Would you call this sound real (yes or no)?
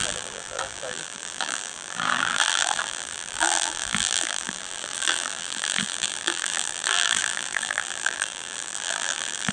no